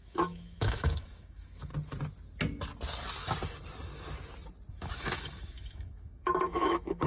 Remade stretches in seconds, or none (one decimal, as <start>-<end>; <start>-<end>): 0.0-1.7; 4.7-7.1